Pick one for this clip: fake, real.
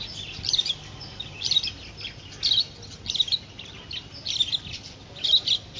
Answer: real